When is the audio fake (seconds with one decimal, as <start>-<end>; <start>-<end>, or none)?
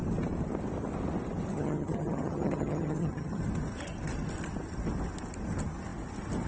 1.5-3.4